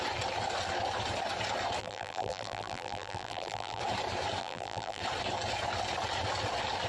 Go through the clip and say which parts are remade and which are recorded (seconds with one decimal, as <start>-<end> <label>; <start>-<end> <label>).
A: 0.0-1.8 recorded; 1.8-3.8 remade; 3.8-4.4 recorded; 4.4-5.0 remade; 5.0-6.9 recorded